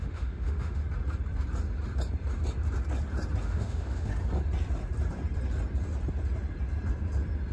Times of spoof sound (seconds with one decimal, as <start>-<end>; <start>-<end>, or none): 0.0-0.8; 3.4-4.1

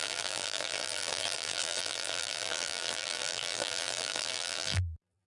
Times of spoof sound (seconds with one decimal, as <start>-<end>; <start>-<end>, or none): 0.0-5.3

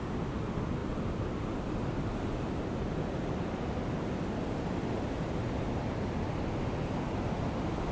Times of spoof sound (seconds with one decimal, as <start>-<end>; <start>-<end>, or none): none

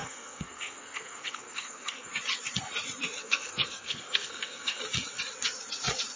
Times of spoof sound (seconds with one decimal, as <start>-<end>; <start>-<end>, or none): 0.0-2.1; 3.2-4.8